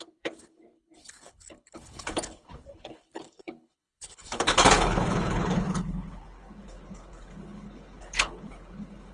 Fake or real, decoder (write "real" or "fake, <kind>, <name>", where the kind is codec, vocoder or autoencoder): fake, codec, HILCodec